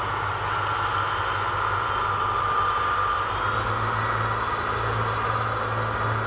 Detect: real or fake real